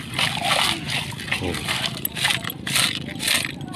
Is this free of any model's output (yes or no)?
yes